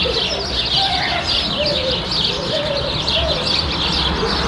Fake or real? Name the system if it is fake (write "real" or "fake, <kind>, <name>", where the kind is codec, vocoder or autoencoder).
real